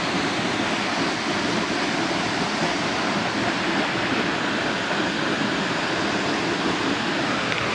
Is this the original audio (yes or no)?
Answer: yes